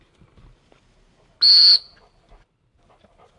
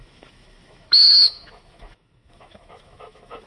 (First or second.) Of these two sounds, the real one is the first